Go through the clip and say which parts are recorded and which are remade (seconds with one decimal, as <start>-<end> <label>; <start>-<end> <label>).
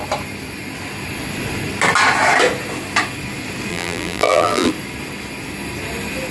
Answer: 0.0-3.7 recorded; 3.7-4.7 remade; 4.7-6.3 recorded